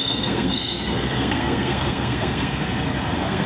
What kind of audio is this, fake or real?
fake